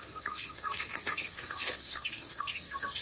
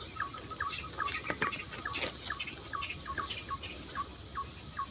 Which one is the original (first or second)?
second